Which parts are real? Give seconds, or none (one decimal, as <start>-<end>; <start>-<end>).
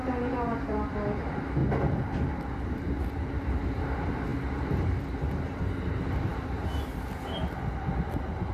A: 0.0-8.5